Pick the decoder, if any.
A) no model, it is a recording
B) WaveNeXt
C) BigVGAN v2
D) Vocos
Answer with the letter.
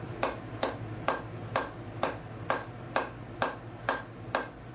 A